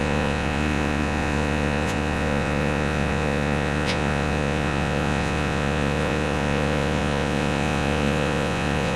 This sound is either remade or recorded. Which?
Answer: remade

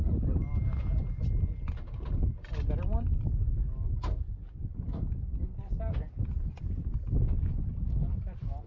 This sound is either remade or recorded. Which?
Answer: recorded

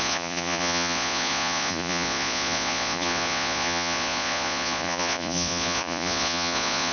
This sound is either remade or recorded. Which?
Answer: remade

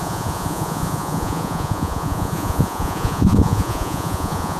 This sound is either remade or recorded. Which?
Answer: remade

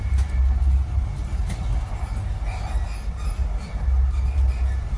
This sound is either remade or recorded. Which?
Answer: recorded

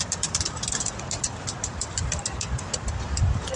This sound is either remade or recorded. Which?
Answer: recorded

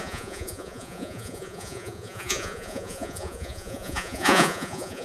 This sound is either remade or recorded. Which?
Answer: remade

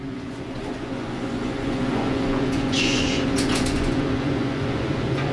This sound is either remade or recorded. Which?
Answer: remade